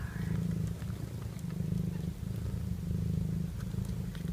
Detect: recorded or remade recorded